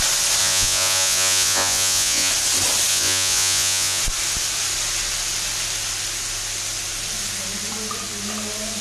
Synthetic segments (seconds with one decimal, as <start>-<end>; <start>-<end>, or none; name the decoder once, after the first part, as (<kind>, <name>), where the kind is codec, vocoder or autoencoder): 0.4-2.3 (vocoder, Vocos); 2.9-4.0